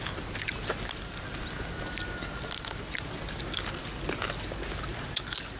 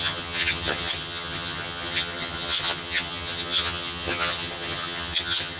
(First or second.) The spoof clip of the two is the second